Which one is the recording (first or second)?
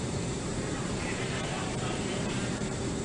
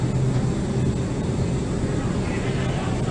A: second